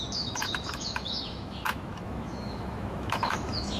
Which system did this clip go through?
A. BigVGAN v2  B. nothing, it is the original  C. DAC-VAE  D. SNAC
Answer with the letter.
C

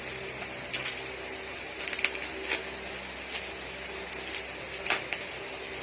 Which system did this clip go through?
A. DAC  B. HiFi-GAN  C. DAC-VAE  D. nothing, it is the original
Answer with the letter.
D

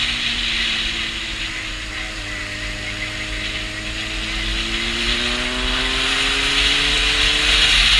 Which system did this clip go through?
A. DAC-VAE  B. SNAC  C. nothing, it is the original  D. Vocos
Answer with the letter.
C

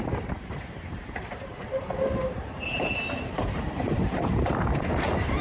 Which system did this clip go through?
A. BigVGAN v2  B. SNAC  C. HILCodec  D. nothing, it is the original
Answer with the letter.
A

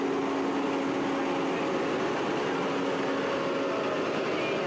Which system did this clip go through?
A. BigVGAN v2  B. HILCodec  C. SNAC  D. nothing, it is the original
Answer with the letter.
D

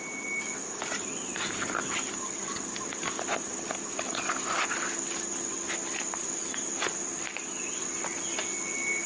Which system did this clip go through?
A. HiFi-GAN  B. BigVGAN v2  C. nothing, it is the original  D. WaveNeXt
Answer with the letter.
C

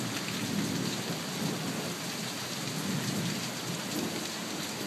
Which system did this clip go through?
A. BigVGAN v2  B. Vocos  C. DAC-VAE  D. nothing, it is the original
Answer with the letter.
D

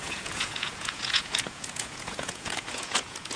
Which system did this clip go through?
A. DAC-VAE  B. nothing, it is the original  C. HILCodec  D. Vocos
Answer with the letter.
D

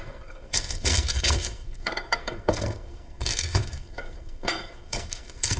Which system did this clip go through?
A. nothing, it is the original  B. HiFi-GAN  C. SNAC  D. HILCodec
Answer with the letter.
C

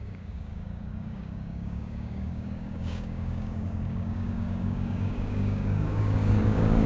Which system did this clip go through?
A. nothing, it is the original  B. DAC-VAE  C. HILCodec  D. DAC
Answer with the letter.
D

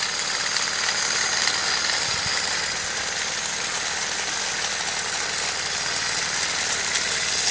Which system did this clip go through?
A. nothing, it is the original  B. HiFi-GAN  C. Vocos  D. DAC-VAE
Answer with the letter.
A